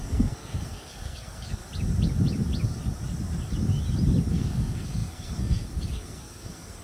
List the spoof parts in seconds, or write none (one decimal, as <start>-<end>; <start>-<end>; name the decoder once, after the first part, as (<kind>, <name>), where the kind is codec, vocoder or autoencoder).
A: 0.0-1.6 (codec, SNAC); 4.3-6.8